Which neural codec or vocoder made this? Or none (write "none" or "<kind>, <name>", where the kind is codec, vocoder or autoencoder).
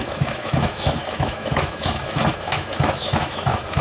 autoencoder, DAC-VAE